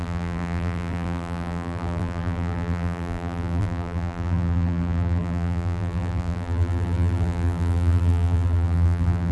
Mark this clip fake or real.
fake